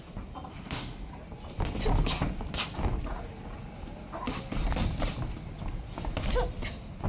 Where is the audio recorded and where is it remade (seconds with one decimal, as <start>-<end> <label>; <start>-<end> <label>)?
0.0-0.5 recorded; 0.5-1.1 remade; 1.1-7.1 recorded